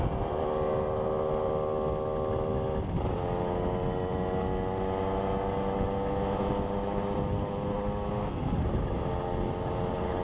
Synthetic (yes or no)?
no